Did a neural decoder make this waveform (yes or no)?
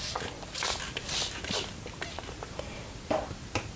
no